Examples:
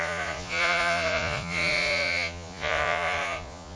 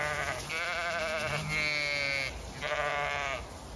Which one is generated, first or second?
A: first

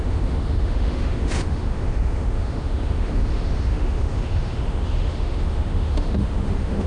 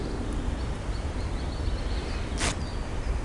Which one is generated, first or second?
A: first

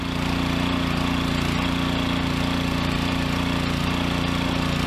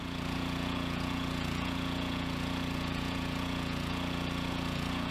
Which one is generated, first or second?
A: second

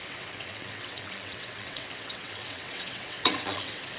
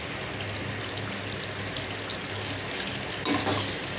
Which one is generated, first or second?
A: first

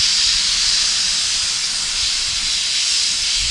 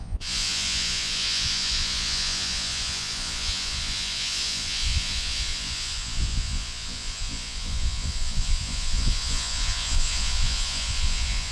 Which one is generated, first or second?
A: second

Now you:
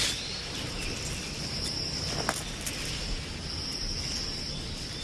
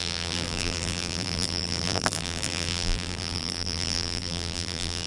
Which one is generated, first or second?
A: second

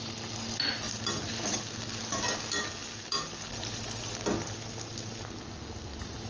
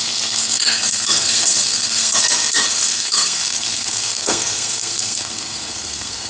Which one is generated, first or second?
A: second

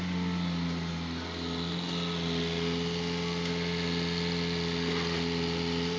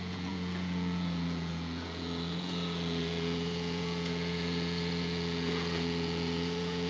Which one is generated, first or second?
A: second